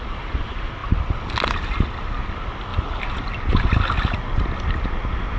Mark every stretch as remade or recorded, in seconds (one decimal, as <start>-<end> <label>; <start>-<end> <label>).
0.0-5.4 recorded